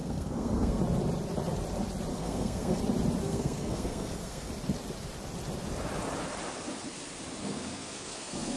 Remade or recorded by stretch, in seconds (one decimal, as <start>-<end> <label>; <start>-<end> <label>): 0.0-0.8 remade; 0.8-2.1 recorded; 2.1-2.8 remade; 2.8-3.2 recorded; 3.2-4.5 remade; 4.5-7.4 recorded; 7.4-8.6 remade